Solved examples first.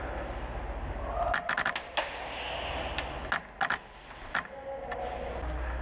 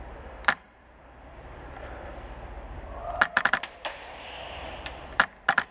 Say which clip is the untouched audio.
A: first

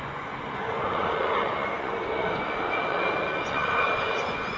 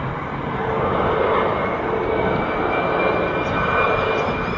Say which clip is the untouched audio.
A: second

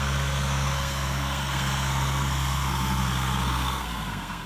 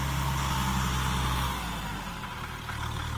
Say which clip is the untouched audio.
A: second